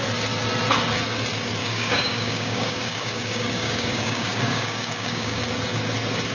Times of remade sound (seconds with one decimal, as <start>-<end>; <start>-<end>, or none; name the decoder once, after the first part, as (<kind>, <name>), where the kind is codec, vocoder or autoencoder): 1.6-5.4 (codec, DAC)